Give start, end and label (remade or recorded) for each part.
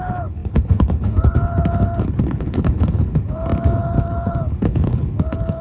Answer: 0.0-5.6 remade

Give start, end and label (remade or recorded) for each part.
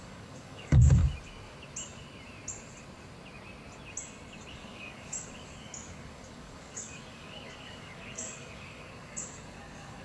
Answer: 0.0-1.0 remade; 1.0-4.5 recorded; 4.5-10.0 remade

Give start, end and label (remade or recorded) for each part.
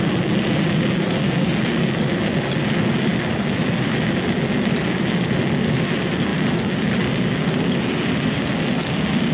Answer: 0.0-9.3 recorded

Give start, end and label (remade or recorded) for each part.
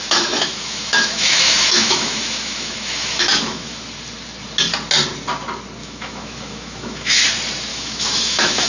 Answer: 0.0-3.8 remade; 3.8-5.8 recorded; 5.8-7.2 remade; 7.2-7.7 recorded; 7.7-8.7 remade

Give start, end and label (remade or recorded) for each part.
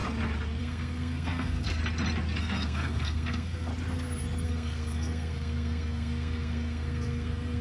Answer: 0.0-0.6 recorded; 0.6-1.8 remade; 1.8-2.4 recorded; 2.4-3.7 remade; 3.7-4.4 recorded; 4.4-7.6 remade